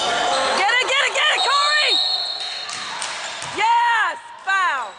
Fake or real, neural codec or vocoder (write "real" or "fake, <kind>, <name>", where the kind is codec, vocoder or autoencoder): real